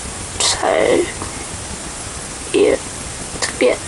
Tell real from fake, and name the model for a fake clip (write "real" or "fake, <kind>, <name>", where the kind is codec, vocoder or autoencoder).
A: real